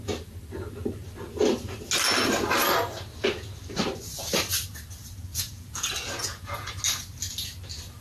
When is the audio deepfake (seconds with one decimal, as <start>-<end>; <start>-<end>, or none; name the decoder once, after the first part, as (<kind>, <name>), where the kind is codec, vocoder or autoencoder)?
5.3-6.7 (vocoder, Vocos)